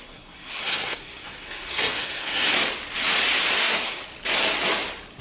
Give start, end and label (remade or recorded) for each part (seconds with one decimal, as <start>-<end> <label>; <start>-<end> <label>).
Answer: 0.0-2.5 remade; 2.5-3.6 recorded; 3.6-4.0 remade; 4.0-5.2 recorded